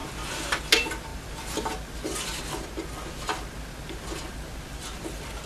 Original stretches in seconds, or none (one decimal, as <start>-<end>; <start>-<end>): 0.0-5.5